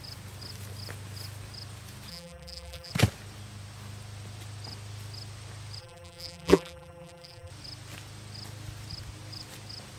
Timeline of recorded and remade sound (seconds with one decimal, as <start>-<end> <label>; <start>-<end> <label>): 0.0-2.1 recorded; 2.1-2.9 remade; 2.9-5.8 recorded; 5.8-7.5 remade; 7.5-10.0 recorded